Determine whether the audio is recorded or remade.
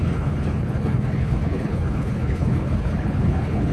remade